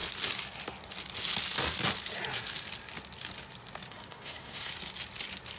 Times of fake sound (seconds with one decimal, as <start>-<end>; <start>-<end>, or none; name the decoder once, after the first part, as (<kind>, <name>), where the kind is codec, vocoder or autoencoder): 3.9-4.7 (codec, SNAC)